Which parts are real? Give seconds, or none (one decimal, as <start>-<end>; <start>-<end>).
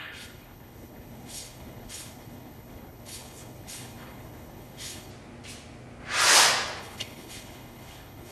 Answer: 5.1-6.8